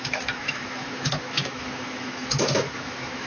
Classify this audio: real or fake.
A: fake